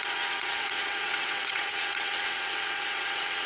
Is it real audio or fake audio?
fake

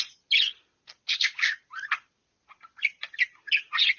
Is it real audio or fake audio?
real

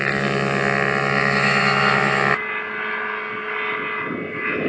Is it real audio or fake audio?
real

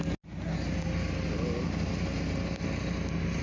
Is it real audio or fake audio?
real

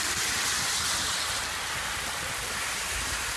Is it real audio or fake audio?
real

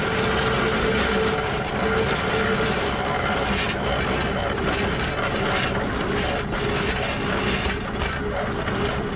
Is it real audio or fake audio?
real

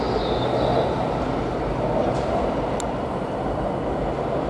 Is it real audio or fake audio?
real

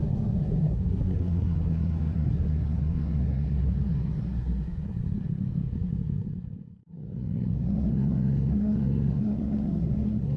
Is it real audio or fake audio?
fake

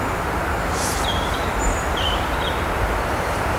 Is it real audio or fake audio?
fake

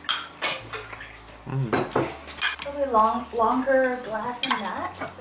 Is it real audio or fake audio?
real